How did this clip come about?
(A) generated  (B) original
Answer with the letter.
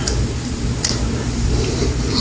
A